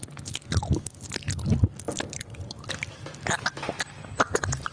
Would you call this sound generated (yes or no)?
no